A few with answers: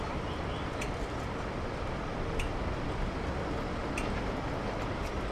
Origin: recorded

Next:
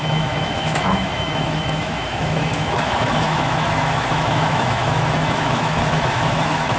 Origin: remade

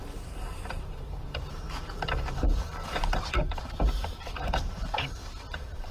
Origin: remade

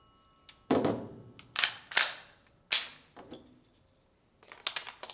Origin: recorded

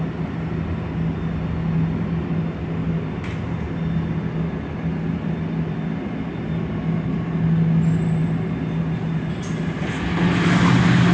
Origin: recorded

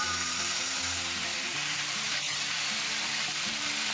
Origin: remade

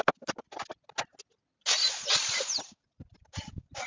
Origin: recorded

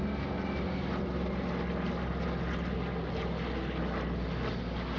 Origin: recorded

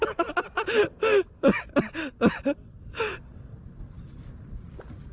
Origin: recorded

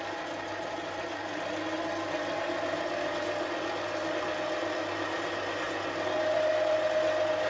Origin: recorded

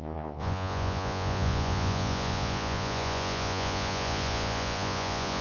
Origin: remade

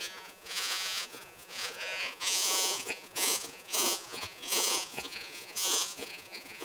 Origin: remade